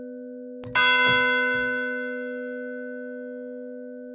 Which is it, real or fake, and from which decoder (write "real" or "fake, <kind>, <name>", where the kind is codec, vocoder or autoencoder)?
real